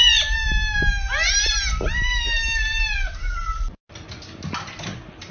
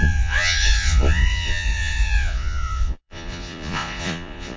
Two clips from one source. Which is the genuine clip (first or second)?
first